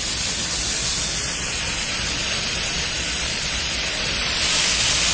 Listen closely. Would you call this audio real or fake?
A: real